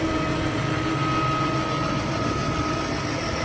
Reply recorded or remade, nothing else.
recorded